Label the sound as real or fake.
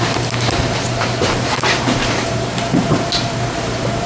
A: fake